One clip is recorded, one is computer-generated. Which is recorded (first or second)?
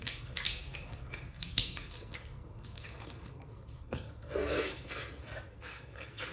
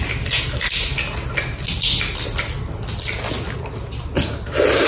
second